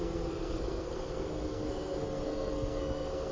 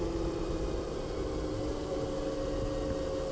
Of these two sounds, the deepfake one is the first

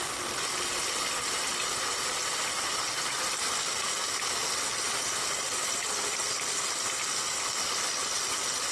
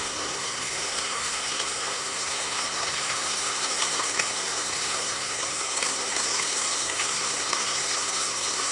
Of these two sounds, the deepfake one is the second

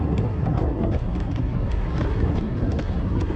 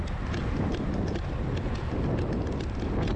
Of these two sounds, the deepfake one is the first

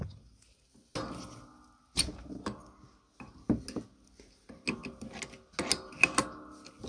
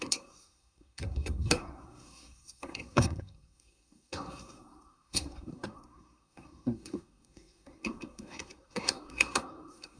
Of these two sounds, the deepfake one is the second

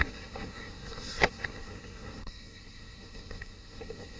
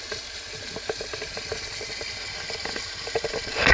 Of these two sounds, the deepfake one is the first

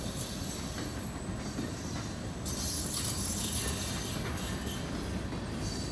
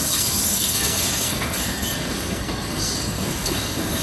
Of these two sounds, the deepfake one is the second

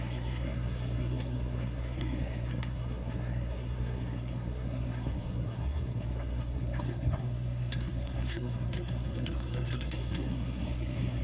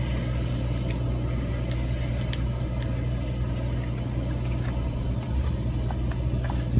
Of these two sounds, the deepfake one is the first